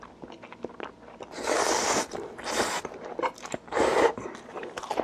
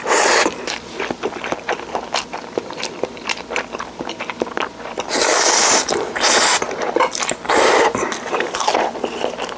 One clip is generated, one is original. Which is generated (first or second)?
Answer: second